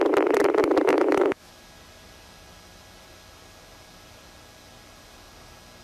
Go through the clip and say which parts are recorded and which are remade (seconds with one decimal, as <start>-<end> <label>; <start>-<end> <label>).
0.0-0.9 recorded; 0.9-1.5 remade; 1.5-5.8 recorded